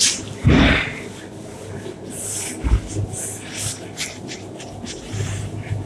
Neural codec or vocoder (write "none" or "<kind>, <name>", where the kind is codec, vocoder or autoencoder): none